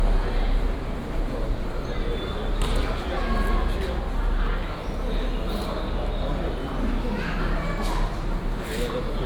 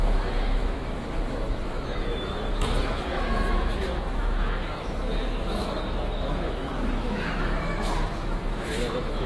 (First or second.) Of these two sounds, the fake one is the second